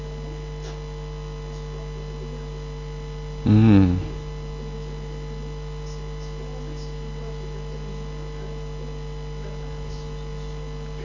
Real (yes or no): yes